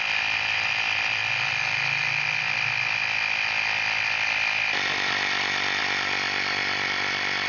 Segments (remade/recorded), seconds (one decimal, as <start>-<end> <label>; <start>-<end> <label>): 0.0-7.5 recorded